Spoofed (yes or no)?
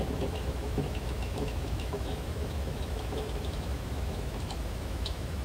yes